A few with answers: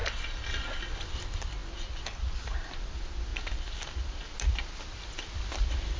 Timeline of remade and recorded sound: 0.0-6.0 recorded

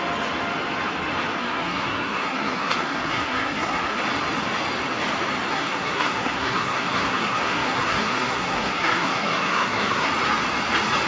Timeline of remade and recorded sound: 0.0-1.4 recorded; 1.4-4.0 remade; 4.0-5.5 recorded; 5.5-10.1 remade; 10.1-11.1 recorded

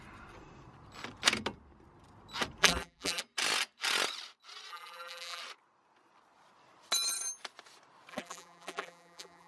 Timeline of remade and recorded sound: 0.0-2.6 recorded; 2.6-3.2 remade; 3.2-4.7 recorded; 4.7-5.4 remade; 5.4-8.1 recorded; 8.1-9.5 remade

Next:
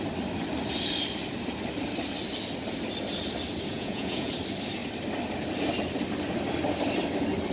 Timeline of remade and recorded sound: 0.0-3.7 recorded; 3.7-4.3 remade; 4.3-7.5 recorded